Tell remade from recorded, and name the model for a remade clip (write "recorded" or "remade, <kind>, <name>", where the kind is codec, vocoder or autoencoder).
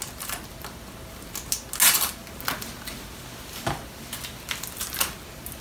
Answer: recorded